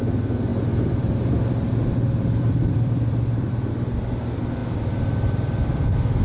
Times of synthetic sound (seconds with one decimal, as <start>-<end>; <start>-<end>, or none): 0.5-3.7; 4.6-6.2